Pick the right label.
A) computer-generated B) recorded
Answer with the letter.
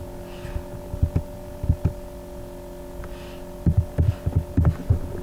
B